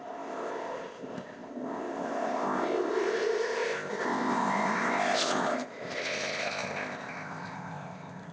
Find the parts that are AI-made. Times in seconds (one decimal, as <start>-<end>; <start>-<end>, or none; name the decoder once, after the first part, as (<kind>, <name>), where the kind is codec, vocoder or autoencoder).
0.0-8.3 (codec, ZipCodec)